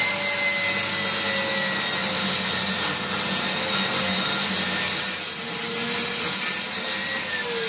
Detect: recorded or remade recorded